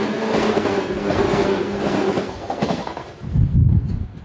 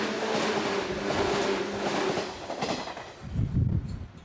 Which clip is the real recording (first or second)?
second